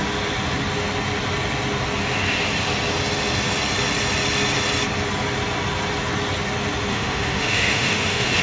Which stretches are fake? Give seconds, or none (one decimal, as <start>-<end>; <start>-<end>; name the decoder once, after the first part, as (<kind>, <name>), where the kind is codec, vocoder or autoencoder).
6.9-8.4 (autoencoder, DAC-VAE)